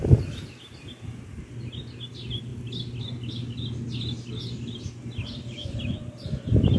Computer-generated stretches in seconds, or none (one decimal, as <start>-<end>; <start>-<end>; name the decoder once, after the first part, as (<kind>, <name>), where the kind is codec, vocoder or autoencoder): none